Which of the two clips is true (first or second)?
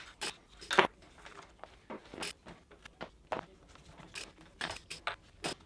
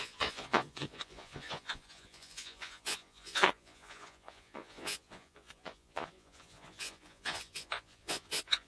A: first